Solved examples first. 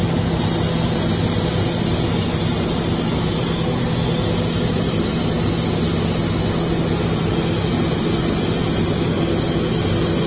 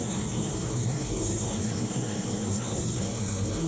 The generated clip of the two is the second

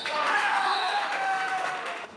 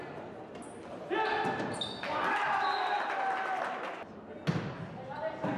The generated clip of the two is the first